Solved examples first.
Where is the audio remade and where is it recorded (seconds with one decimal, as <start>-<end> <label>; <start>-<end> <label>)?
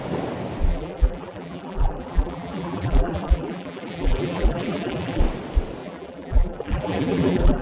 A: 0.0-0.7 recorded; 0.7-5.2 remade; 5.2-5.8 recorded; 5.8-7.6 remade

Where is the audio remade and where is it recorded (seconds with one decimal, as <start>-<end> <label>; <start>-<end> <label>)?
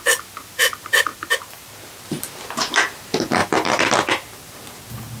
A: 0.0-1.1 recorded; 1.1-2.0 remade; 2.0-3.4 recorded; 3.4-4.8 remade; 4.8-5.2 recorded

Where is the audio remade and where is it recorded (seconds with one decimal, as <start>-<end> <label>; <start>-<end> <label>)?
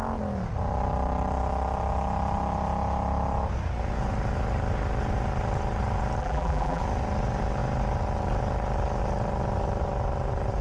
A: 0.0-6.2 recorded; 6.2-6.8 remade; 6.8-10.6 recorded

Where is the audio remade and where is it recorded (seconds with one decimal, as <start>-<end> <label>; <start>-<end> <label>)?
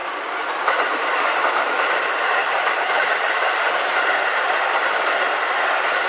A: 0.0-3.7 remade; 3.7-6.1 recorded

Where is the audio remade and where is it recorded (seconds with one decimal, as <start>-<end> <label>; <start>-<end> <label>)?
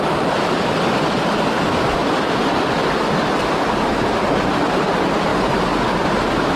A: 0.0-2.0 recorded; 2.0-3.4 remade; 3.4-6.6 recorded